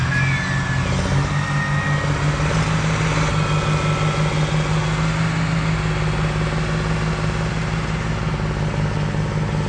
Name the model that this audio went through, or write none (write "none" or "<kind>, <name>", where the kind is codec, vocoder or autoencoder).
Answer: none